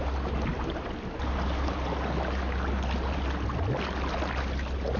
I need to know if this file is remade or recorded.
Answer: recorded